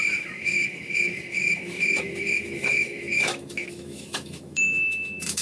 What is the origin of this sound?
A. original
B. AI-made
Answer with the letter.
B